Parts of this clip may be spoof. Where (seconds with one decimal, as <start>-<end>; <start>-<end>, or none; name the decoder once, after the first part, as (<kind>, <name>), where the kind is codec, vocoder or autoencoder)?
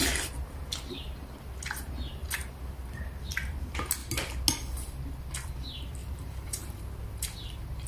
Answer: 6.0-6.6 (vocoder, BigVGAN v2)